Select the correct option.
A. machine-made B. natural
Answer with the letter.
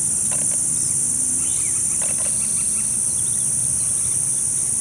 B